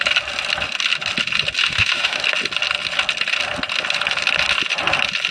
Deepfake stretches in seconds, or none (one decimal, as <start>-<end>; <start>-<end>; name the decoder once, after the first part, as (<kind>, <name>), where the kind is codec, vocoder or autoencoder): 1.6-2.2 (autoencoder, DAC-VAE)